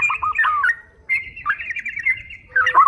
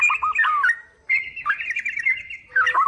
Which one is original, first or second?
second